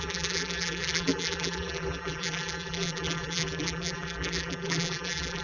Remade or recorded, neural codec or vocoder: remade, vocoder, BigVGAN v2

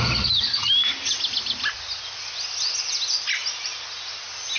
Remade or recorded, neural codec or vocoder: recorded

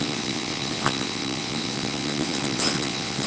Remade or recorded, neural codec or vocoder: remade, vocoder, WaveNeXt